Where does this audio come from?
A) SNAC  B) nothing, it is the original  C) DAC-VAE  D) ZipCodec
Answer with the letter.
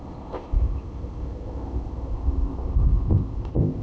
D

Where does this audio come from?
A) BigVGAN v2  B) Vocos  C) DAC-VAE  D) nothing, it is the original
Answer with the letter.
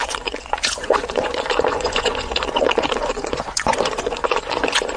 B